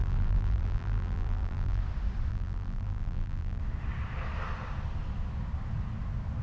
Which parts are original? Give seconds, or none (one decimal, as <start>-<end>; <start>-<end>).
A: 1.8-2.3; 3.6-6.4